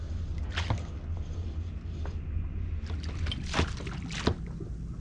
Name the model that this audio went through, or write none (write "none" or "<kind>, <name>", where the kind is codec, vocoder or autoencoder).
none